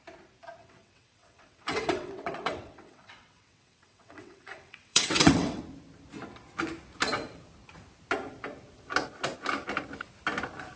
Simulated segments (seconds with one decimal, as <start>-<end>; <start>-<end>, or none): 0.6-5.6